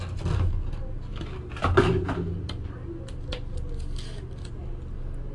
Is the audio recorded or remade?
recorded